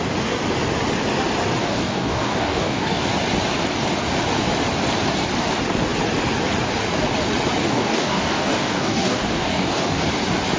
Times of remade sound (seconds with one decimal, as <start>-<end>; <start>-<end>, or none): 1.6-3.1; 7.6-10.0